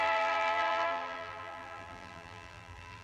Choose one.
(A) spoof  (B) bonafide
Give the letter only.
A